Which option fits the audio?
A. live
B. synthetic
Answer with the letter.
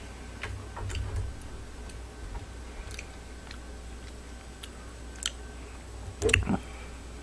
A